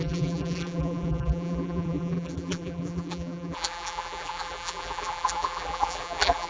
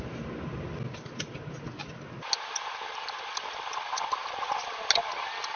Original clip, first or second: second